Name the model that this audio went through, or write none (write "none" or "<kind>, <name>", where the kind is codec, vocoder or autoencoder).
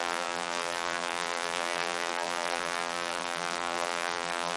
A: vocoder, BigVGAN v2